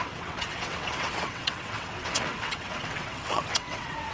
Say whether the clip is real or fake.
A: fake